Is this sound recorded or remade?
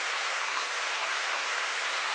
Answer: remade